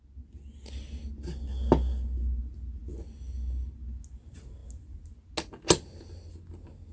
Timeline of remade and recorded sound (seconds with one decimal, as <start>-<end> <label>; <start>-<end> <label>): 0.0-6.9 recorded